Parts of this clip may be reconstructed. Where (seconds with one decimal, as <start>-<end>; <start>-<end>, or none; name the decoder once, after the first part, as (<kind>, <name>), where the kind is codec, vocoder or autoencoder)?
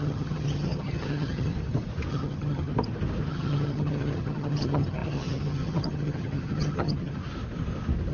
0.0-1.5 (vocoder, HiFi-GAN); 2.1-2.7; 3.3-7.2